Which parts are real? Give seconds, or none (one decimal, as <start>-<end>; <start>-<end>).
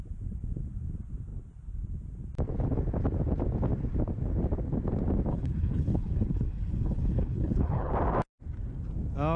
0.0-5.3; 7.9-9.4